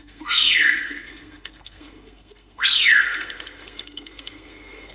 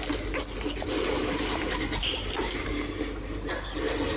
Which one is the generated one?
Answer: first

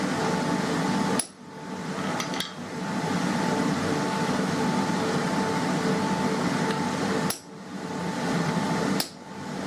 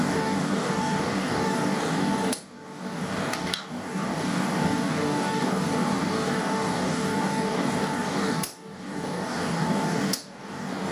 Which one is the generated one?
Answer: second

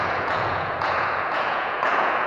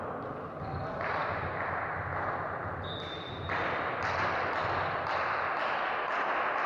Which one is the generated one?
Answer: first